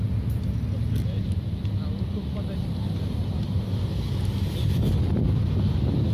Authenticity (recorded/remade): recorded